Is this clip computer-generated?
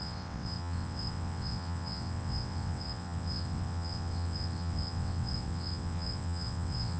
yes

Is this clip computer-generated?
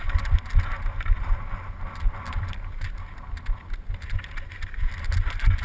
no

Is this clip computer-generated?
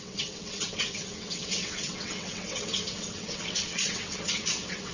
yes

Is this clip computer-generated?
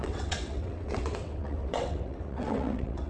yes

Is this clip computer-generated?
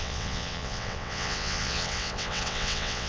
yes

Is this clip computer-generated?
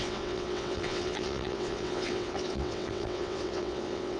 yes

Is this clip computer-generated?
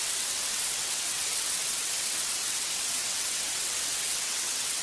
yes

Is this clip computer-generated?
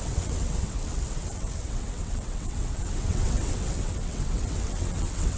yes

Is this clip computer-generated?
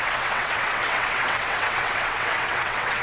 yes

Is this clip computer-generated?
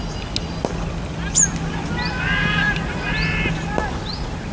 no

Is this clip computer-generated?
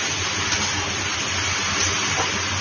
no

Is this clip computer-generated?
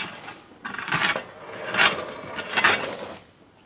no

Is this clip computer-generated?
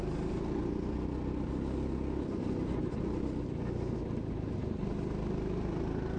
no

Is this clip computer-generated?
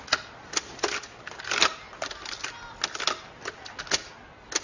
no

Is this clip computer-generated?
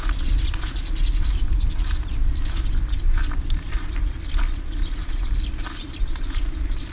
no